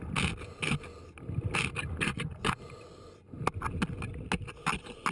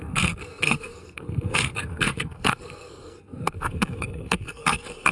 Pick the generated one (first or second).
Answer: second